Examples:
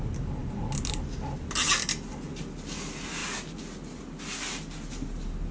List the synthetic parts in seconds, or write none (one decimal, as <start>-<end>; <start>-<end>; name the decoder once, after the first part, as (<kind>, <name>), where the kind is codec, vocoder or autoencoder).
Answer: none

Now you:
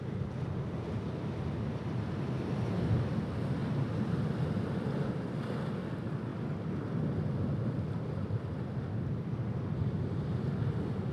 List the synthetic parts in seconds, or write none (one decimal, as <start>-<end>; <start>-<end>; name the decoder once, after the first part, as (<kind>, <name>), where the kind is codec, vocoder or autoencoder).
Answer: none

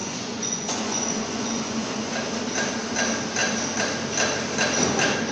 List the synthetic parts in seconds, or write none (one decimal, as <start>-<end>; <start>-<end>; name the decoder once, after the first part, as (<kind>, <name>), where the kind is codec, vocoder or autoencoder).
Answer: 0.0-2.1 (vocoder, Vocos)

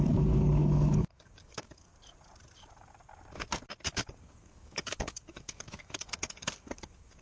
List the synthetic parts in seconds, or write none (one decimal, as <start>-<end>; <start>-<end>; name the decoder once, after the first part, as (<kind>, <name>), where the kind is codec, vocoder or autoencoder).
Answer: 0.0-1.9 (codec, DAC); 3.9-7.2